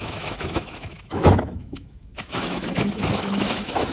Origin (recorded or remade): remade